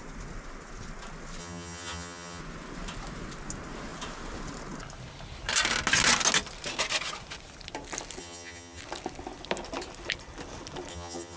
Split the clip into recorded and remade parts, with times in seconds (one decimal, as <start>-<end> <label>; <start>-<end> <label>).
0.0-1.4 recorded; 1.4-2.4 remade; 2.4-8.2 recorded; 8.2-8.8 remade; 8.8-10.9 recorded; 10.9-11.4 remade